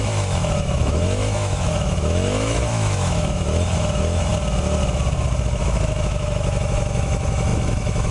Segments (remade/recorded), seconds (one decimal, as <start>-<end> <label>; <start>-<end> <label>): 0.0-4.3 remade; 4.3-5.6 recorded; 5.6-8.1 remade